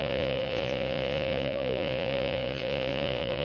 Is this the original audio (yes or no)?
no